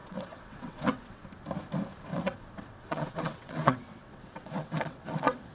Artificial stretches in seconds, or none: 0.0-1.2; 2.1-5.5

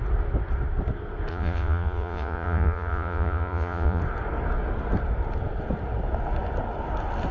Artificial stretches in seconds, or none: 1.3-4.0

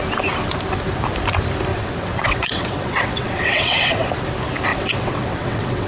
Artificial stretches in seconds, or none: 1.7-4.1; 4.7-5.9

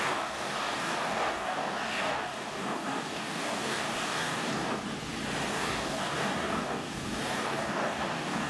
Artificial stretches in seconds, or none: 0.0-4.8; 5.5-8.5

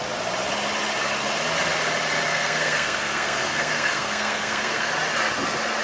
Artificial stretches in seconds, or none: 2.3-4.9

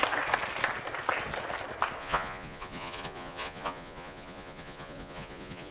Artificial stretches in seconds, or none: 2.0-5.7